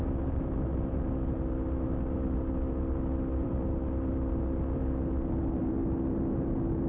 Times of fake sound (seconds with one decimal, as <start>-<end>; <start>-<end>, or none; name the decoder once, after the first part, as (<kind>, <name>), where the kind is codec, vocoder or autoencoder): 0.0-5.8 (vocoder, BigVGAN v2)